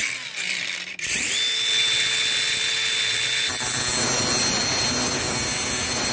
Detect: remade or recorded recorded